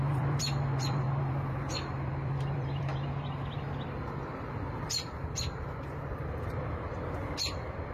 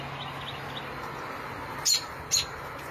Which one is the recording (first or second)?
second